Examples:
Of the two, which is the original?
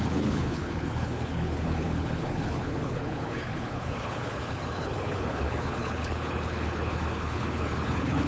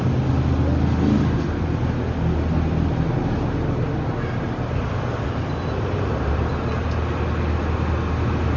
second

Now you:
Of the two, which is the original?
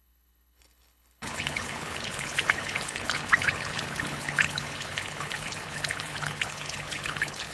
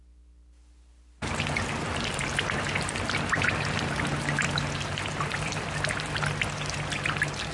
second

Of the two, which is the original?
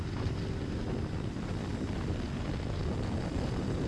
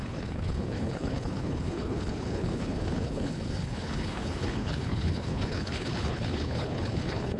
first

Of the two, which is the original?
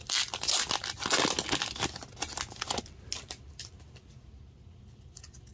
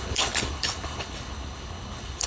first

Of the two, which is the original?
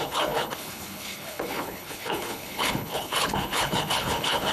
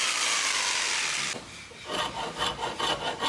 second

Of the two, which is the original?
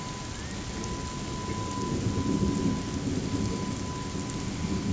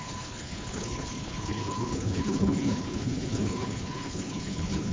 first